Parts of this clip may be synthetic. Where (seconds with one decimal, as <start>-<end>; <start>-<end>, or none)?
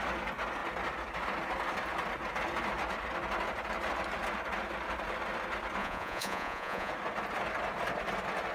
5.8-6.9